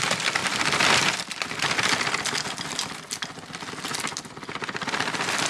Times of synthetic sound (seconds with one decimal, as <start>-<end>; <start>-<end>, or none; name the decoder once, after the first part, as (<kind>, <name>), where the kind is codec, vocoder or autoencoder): none